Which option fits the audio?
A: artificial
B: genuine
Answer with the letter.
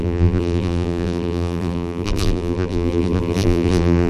A